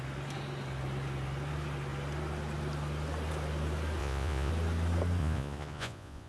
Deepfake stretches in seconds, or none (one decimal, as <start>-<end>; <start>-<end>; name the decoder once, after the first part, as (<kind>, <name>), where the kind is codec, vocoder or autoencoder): 4.0-4.5 (vocoder, Vocos); 5.2-6.3